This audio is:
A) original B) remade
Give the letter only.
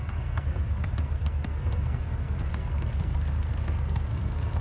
B